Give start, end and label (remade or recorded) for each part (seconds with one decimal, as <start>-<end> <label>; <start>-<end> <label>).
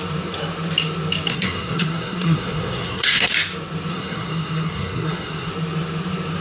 0.0-1.3 recorded; 1.3-3.3 remade; 3.3-3.9 recorded; 3.9-5.5 remade; 5.5-6.4 recorded